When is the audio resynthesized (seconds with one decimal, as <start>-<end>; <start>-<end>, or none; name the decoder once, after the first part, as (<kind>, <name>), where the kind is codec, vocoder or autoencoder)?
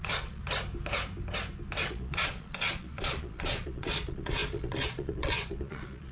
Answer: 0.0-0.4 (vocoder, Vocos); 1.9-6.1